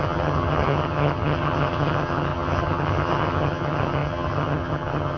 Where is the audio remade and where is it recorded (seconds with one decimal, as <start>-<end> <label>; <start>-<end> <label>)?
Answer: 0.0-5.2 remade